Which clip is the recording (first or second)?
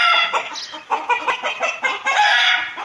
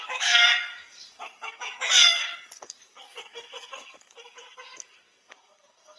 first